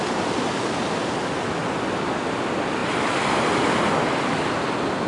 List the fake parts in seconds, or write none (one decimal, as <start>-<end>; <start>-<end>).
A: none